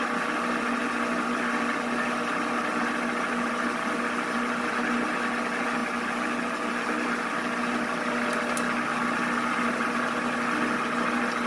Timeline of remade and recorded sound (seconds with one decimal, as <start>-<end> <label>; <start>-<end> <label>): 0.0-11.5 recorded